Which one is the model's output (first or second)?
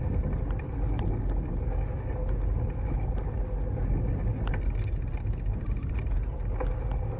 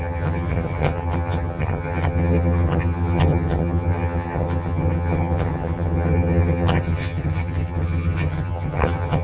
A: second